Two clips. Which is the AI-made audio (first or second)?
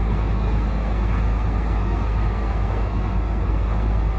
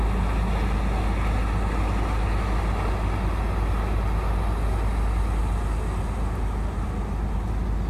first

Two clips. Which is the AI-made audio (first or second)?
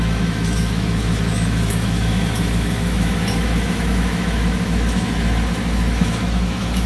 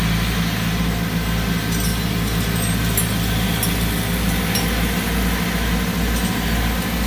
first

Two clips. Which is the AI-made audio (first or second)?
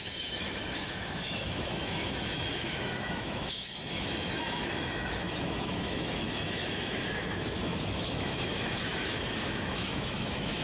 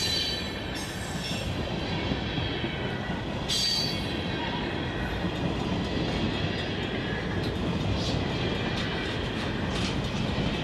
first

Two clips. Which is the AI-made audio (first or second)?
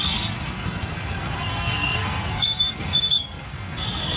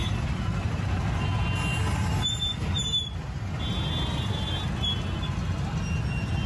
first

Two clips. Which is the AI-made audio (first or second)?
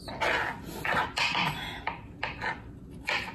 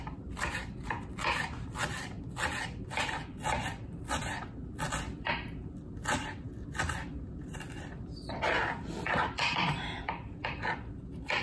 second